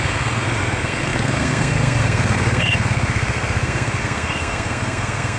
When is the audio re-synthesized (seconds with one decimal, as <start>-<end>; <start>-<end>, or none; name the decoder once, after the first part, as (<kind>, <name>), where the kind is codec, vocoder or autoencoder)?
0.0-5.4 (codec, SNAC)